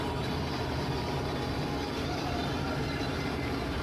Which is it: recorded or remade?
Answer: recorded